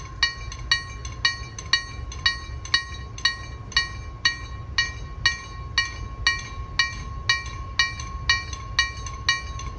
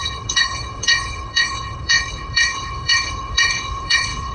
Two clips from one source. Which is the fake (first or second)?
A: second